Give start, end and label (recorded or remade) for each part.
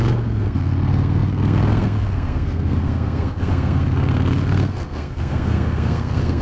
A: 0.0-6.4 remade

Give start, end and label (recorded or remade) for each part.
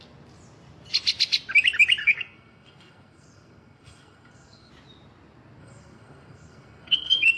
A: 0.0-2.0 recorded; 2.0-4.7 remade; 4.7-5.6 recorded; 5.6-7.4 remade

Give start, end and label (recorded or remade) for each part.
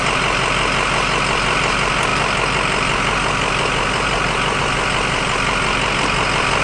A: 0.0-6.6 recorded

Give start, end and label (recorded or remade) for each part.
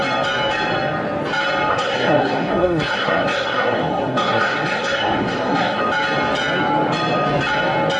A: 0.0-1.7 recorded; 1.7-5.8 remade; 5.8-8.0 recorded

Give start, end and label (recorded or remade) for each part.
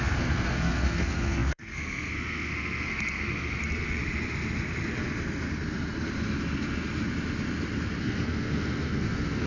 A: 0.0-4.0 remade; 4.0-8.0 recorded; 8.0-9.5 remade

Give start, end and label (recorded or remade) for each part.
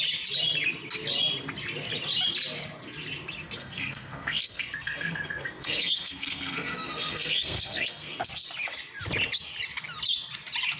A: 0.0-3.6 recorded; 3.6-8.3 remade; 8.3-10.8 recorded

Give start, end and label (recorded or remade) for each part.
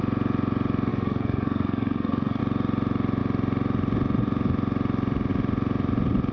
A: 0.0-0.9 recorded; 0.9-2.4 remade; 2.4-6.3 recorded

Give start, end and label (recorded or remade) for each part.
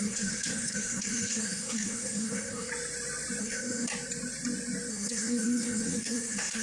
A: 0.0-2.7 remade; 2.7-3.4 recorded; 3.4-3.9 remade; 3.9-4.9 recorded; 4.9-6.6 remade